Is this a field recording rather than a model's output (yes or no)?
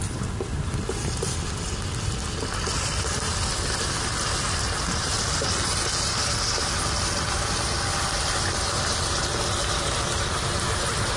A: yes